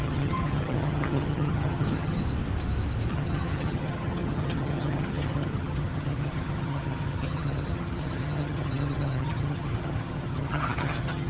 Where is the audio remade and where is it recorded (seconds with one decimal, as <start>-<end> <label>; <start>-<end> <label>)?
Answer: 0.0-2.2 remade; 2.2-3.1 recorded; 3.1-11.3 remade